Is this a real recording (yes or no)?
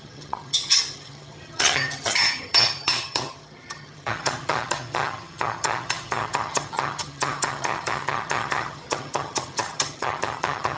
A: no